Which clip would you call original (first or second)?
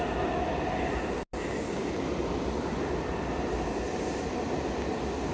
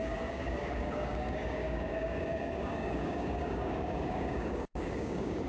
first